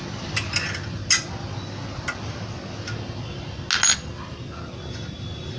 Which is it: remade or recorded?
recorded